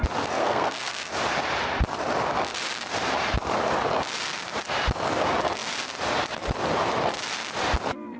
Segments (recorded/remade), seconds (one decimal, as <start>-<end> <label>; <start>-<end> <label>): 0.0-0.4 recorded; 0.4-1.1 remade; 1.1-8.2 recorded